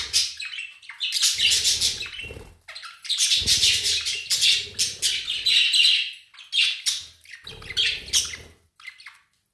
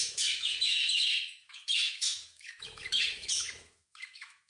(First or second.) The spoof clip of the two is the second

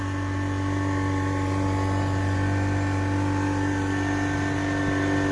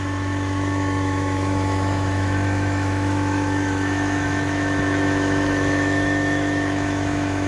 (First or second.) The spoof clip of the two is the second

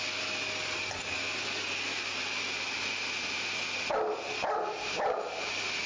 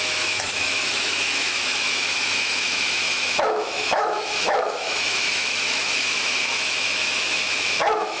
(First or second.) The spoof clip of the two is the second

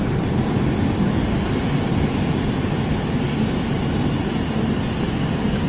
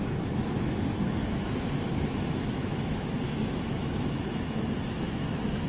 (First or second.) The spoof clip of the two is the second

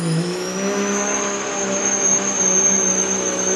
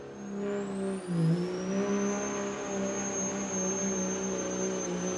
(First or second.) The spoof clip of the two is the first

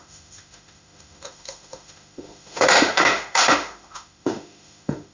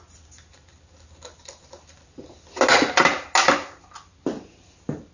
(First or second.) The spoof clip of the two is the first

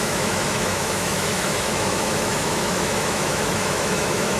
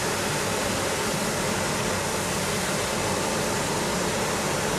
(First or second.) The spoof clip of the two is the first